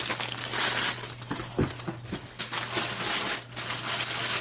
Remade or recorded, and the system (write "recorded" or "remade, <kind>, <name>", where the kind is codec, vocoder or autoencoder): recorded